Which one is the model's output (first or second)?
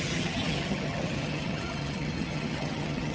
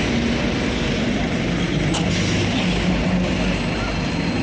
first